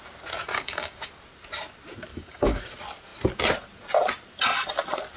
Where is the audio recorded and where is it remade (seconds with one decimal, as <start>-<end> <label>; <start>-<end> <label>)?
0.0-0.5 recorded; 0.5-1.1 remade; 1.1-2.1 recorded; 2.1-2.6 remade; 2.6-5.2 recorded